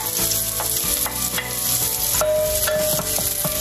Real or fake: real